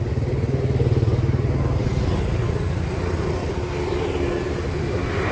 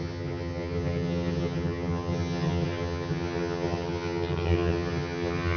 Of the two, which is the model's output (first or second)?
second